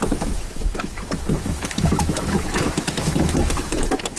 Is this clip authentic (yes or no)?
no